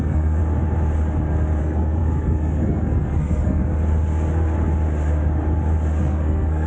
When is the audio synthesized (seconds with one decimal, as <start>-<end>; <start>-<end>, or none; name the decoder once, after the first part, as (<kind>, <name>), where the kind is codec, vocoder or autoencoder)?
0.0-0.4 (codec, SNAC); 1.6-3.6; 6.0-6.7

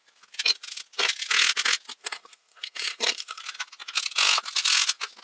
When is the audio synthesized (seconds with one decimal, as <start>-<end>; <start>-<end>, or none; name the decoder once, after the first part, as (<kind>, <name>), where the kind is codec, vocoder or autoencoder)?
2.0-3.4 (codec, SNAC)

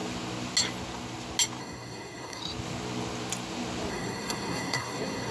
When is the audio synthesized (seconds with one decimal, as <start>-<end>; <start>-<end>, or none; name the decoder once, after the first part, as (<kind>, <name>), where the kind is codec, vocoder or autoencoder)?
1.6-2.4 (codec, SNAC); 3.9-5.3

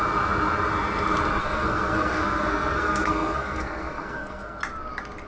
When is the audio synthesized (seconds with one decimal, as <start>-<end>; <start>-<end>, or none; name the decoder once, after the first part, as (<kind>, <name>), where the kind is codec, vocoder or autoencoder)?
1.4-4.6 (codec, SNAC)

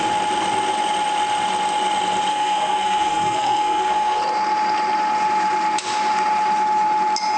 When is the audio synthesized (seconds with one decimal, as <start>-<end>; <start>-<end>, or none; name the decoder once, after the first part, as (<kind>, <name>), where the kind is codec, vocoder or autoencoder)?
2.3-4.2 (codec, SNAC)